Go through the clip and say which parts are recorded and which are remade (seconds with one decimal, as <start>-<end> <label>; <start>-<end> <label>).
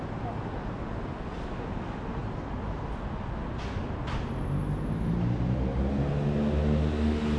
0.0-7.4 recorded